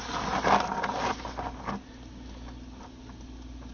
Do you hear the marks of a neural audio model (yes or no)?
no